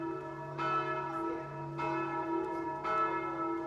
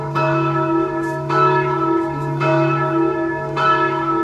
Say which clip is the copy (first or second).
second